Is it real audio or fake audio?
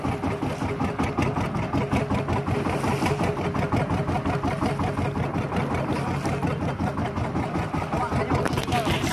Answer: real